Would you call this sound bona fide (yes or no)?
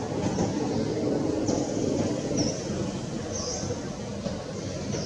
yes